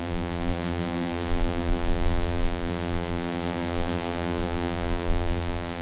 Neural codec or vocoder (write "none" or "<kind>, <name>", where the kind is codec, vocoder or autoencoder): vocoder, BigVGAN v2